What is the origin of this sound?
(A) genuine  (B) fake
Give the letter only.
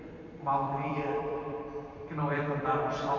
B